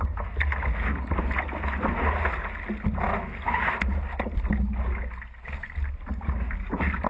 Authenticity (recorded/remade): recorded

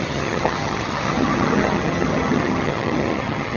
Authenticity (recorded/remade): remade